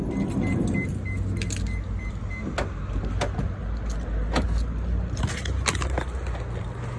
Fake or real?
real